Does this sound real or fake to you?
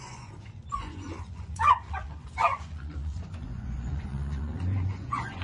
fake